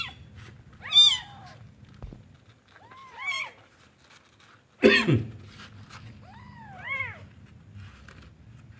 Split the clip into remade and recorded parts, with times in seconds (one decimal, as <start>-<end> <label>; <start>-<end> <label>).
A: 0.0-8.8 recorded